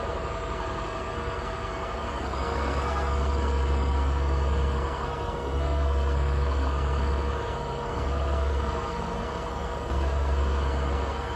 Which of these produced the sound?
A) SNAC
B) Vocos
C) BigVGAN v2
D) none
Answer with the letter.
A